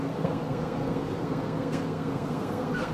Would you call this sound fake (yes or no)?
yes